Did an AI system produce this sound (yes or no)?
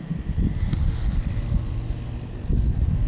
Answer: no